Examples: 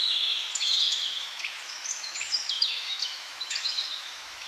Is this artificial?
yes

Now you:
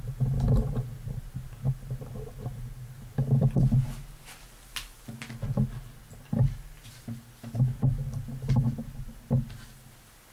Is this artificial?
no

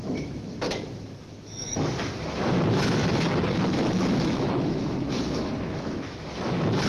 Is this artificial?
yes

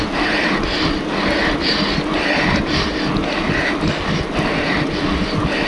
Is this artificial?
no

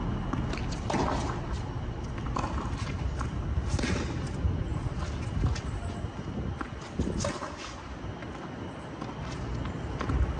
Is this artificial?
no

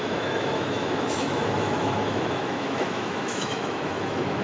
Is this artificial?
yes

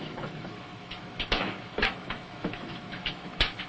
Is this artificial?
yes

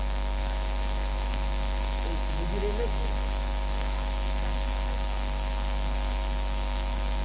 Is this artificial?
yes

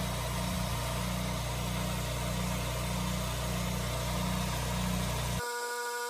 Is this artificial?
no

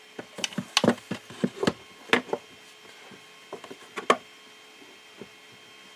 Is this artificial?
no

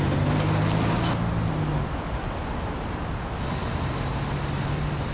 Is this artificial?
no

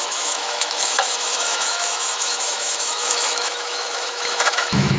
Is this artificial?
yes